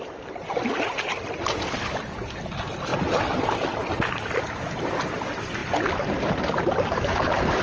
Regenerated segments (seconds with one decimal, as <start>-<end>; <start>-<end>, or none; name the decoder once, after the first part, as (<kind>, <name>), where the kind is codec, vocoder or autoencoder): none

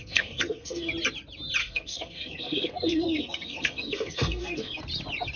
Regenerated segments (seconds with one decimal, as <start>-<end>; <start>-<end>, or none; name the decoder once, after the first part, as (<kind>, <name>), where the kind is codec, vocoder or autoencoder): 0.0-0.9 (codec, SNAC); 1.6-4.8

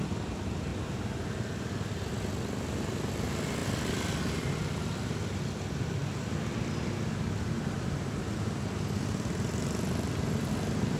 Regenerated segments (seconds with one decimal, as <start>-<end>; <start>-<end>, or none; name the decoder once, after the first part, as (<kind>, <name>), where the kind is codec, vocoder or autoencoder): none

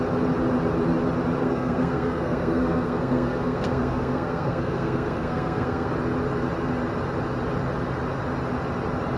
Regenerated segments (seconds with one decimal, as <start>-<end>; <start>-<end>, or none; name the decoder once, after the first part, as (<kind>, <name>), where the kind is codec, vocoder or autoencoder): 1.4-5.9 (codec, SNAC)

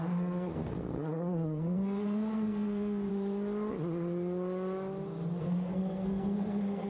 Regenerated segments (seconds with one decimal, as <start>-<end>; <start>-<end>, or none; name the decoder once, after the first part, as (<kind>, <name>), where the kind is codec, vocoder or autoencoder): 0.0-3.1 (codec, SNAC); 5.4-6.9

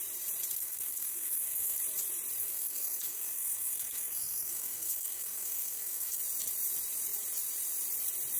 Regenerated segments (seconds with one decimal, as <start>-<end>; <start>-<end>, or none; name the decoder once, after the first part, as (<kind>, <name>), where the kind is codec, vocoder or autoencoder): 0.6-1.8 (codec, SNAC); 2.4-6.2

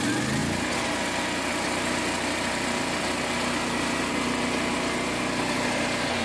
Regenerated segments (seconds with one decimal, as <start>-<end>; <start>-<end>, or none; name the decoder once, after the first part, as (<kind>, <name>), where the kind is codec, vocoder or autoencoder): none